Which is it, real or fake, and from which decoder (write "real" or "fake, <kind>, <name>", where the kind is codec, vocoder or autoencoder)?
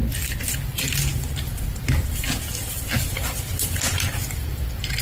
real